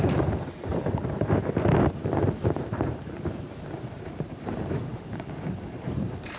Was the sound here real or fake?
fake